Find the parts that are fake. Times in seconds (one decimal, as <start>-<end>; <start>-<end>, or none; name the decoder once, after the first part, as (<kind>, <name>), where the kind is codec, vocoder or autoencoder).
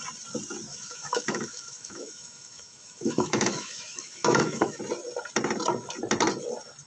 0.7-4.8 (autoencoder, DAC-VAE)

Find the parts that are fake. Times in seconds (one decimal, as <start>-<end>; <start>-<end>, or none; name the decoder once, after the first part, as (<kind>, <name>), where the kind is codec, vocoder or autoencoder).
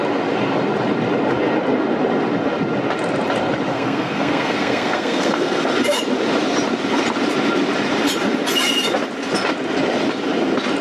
3.7-5.6 (codec, SNAC)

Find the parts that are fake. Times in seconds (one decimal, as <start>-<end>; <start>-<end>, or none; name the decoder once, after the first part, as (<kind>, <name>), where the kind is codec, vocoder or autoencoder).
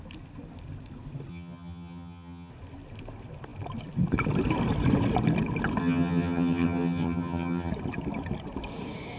1.3-2.5 (vocoder, HiFi-GAN); 5.8-7.7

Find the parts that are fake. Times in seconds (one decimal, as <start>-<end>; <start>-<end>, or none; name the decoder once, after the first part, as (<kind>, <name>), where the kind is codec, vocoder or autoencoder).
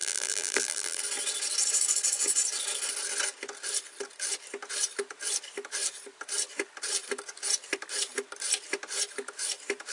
0.0-1.0 (vocoder, BigVGAN v2)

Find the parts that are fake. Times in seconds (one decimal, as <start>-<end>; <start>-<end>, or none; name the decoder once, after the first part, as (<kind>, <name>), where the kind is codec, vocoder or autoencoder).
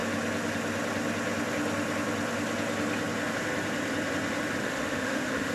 4.6-5.5 (autoencoder, DAC-VAE)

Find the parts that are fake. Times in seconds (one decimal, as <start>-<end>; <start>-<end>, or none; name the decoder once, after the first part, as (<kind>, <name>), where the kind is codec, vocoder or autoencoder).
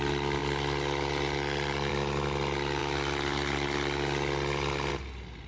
none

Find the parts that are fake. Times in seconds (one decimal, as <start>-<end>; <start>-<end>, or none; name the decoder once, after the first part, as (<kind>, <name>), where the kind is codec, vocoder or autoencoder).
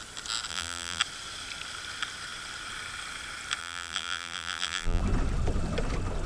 0.5-1.0 (vocoder, BigVGAN v2); 3.6-5.0